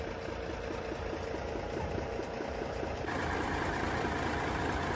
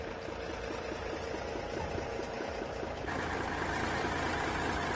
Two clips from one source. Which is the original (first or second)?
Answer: second